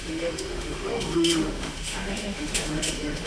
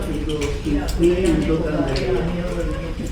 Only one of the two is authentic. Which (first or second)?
second